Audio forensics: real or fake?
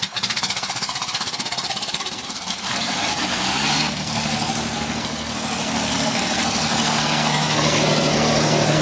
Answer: fake